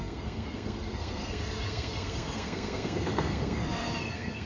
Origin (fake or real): fake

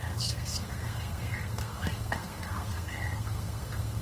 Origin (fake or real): fake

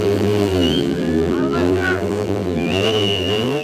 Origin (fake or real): fake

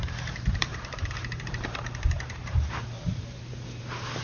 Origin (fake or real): fake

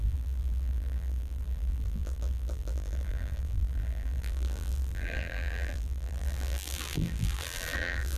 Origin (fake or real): fake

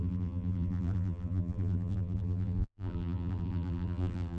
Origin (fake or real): fake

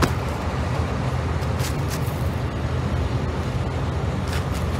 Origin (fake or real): real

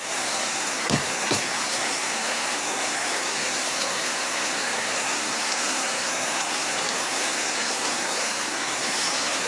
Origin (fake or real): fake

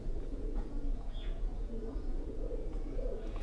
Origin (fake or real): fake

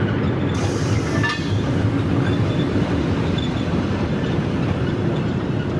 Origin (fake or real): real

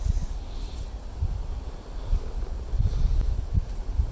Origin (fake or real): real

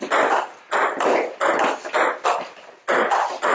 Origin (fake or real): real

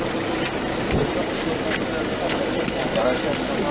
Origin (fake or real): real